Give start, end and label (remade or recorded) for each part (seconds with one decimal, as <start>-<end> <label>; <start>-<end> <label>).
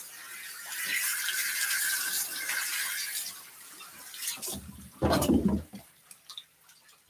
0.0-7.1 recorded